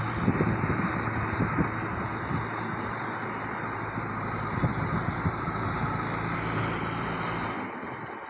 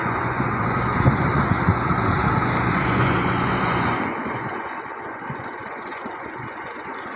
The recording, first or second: first